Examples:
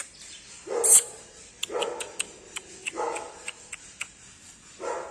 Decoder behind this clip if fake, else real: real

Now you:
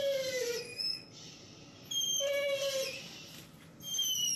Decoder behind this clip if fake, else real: real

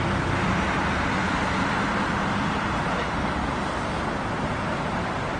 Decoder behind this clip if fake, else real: real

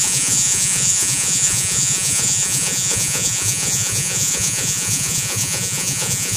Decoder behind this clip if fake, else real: fake, vocoder, Vocos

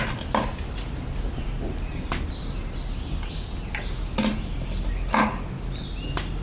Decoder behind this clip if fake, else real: real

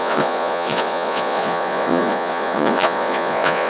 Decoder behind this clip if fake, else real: fake, vocoder, Vocos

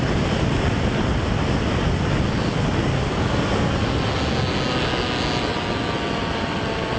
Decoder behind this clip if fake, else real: real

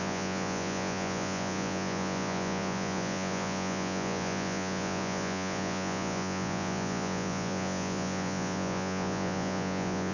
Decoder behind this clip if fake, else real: fake, vocoder, Vocos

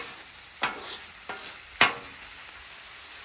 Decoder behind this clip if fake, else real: real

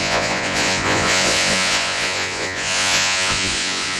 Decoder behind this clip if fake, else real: fake, vocoder, Vocos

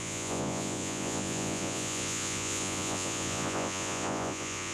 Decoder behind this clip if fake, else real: fake, vocoder, Vocos